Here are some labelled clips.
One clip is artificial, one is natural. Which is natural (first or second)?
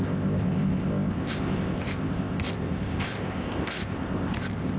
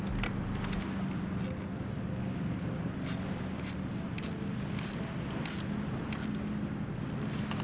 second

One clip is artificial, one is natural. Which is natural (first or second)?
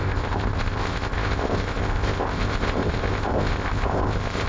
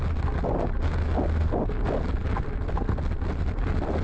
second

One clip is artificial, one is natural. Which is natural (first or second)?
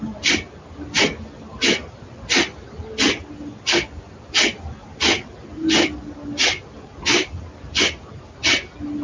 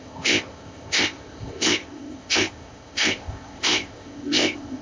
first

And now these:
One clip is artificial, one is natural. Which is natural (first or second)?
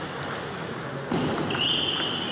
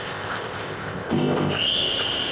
first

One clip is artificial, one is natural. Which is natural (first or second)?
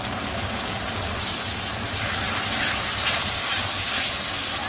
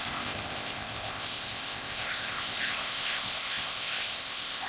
first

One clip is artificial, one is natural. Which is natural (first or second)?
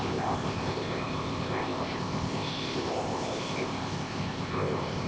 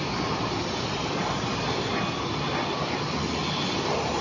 second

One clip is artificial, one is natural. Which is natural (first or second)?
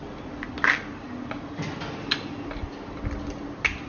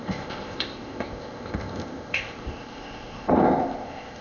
first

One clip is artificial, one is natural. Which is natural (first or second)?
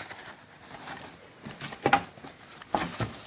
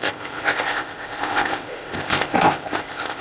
first